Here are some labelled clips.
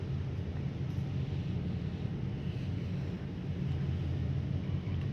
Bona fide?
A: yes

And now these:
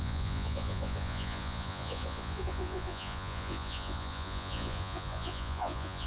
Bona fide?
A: no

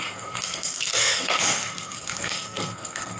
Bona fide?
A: no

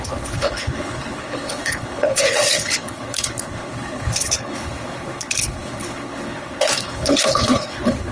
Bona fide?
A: no